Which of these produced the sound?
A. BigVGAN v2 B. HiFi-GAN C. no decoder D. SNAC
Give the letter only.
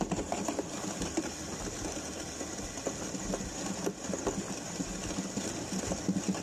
C